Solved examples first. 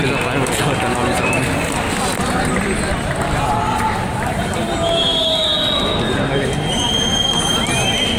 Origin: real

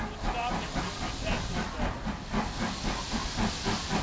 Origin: real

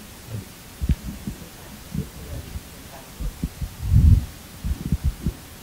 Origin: real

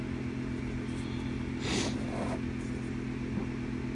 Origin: real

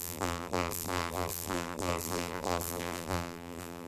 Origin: fake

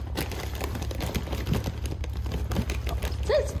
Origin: fake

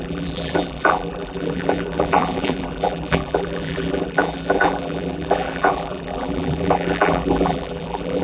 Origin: fake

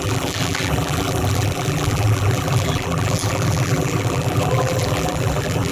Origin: fake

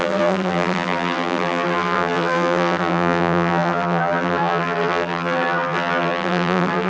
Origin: fake